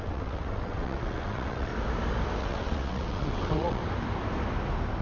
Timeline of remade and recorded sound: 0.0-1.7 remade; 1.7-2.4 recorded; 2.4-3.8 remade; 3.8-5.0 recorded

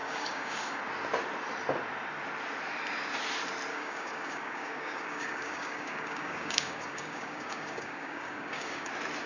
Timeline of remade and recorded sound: 0.0-0.8 remade; 0.8-3.7 recorded; 3.7-8.9 remade; 8.9-9.3 recorded

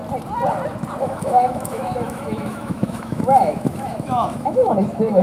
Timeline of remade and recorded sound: 0.0-1.0 recorded; 1.0-5.2 remade

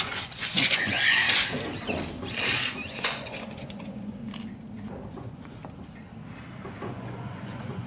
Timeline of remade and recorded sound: 0.0-1.2 remade; 1.2-2.9 recorded; 2.9-4.2 remade; 4.2-5.1 recorded; 5.1-5.6 remade; 5.6-6.8 recorded; 6.8-7.9 remade

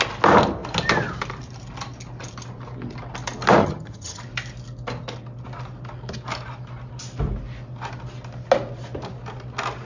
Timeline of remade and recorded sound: 0.0-3.6 recorded; 3.6-4.2 remade; 4.2-9.9 recorded

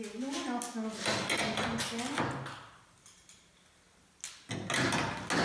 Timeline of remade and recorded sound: 0.0-5.4 recorded

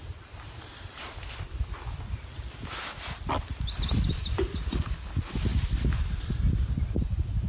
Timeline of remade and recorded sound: 0.0-4.5 remade; 4.5-7.5 recorded

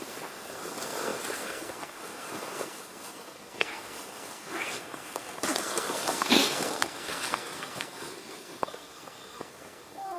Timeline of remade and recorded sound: 0.0-10.2 remade